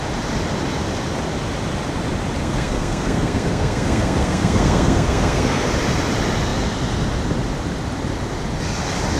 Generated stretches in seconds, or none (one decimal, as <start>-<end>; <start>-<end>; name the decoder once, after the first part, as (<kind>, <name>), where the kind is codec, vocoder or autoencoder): 2.4-5.7 (codec, SNAC)